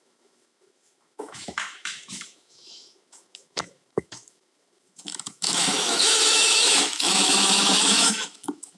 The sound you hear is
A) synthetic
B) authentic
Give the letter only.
A